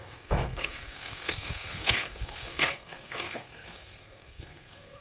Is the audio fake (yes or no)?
yes